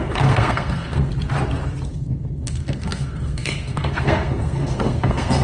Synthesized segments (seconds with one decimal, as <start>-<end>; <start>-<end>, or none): 0.0-1.1; 1.9-5.4